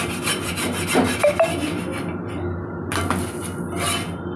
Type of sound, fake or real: real